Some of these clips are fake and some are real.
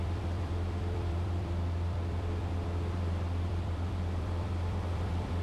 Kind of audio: fake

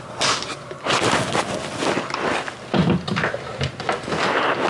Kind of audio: real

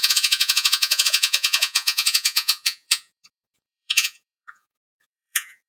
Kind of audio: fake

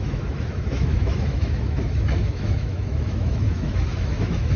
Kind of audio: fake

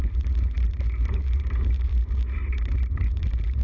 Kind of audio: fake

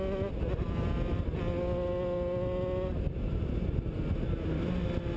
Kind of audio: real